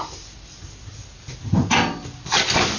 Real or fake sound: real